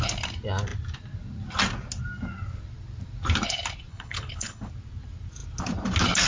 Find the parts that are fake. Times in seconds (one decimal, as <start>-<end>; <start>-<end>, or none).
3.9-4.7